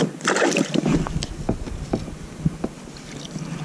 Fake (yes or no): no